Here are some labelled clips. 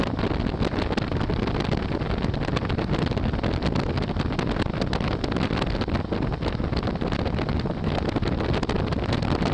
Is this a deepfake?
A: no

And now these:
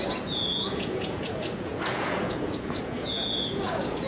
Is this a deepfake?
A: yes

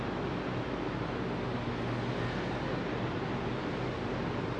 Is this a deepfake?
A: no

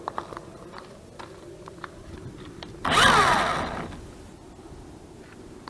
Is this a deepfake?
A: no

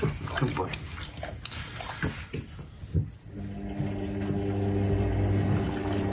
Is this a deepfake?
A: no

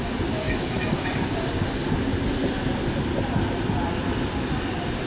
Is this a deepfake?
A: no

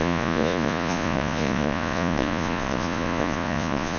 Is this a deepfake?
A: yes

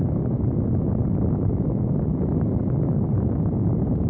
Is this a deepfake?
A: no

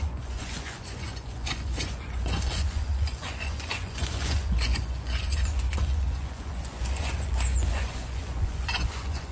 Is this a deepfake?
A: yes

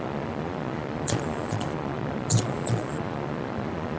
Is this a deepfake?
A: yes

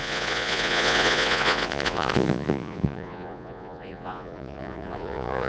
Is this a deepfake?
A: yes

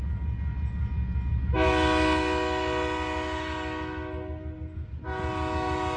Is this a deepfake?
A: no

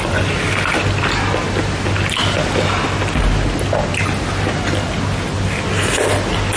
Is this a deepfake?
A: no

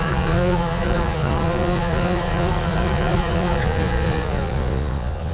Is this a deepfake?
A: yes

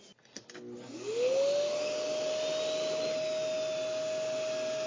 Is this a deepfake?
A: no